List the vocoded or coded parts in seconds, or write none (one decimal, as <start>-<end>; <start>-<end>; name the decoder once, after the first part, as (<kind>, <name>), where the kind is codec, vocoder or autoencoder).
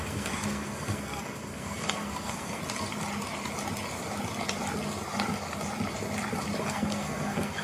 0.0-2.6 (codec, SNAC); 6.6-7.6